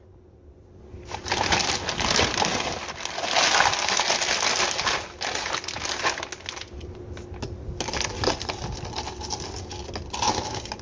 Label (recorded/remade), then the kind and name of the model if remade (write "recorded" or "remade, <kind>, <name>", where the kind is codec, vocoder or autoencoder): recorded